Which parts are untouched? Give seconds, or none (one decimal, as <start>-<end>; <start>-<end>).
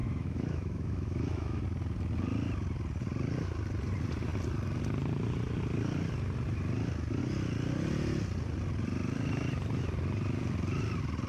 1.6-11.3